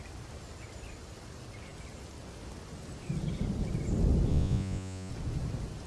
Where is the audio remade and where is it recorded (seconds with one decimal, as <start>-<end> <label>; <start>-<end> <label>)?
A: 0.0-4.3 recorded; 4.3-5.1 remade; 5.1-5.9 recorded